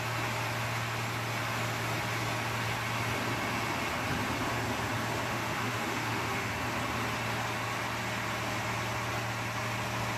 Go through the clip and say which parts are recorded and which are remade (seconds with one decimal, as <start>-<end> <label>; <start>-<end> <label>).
0.0-5.3 recorded; 5.3-6.5 remade; 6.5-10.2 recorded